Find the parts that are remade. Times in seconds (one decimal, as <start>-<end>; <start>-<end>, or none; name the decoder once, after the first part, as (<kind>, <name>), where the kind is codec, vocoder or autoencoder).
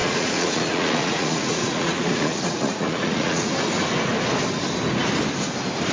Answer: 0.0-3.5 (vocoder, Vocos)